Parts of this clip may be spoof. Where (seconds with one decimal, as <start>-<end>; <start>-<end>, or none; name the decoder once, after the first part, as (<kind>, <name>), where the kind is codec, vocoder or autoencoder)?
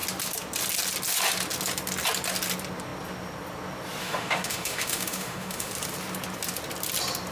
4.0-5.7 (autoencoder, DAC-VAE)